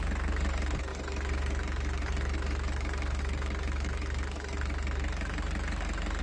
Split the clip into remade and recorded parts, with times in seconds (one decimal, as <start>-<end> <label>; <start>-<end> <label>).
0.0-6.2 remade